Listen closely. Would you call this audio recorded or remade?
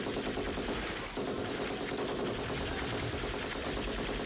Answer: recorded